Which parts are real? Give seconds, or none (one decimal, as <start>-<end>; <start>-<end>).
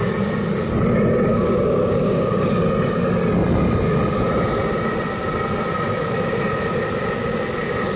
0.0-1.3; 2.5-8.0